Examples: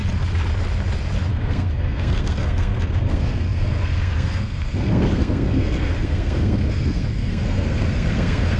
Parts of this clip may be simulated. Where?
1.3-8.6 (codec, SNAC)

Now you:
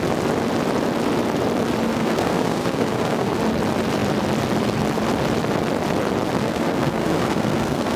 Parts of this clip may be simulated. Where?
1.9-3.4 (codec, SNAC); 6.4-8.0

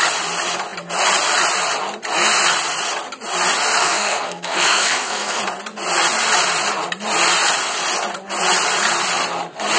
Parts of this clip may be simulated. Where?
3.8-5.4 (codec, SNAC)

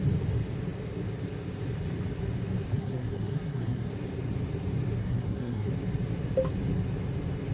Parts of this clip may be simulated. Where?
2.7-3.9 (codec, SNAC); 5.0-5.7

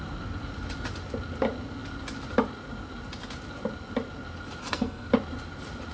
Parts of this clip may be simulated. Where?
4.6-5.1 (codec, SNAC)